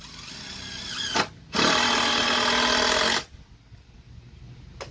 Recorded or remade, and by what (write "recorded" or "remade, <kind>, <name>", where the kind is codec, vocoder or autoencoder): recorded